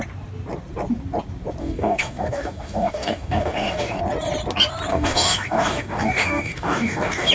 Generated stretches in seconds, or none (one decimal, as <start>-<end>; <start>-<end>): 1.6-4.0; 4.9-7.3